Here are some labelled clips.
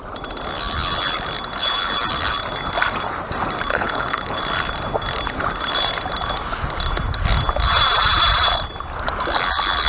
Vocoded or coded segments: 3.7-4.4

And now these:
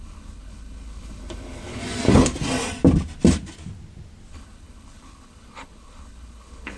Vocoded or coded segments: 0.0-1.8; 4.3-6.8

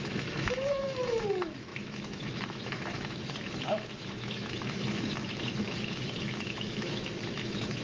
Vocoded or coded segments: 0.0-7.8

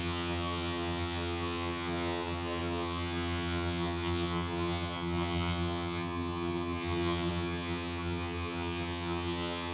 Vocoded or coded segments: 0.0-9.7

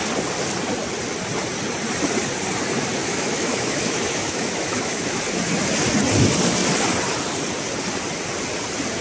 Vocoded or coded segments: 3.0-5.2

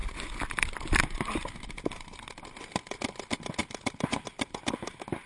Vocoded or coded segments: 0.0-2.5; 3.6-5.3

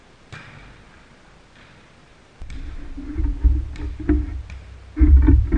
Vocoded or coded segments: 2.1-4.4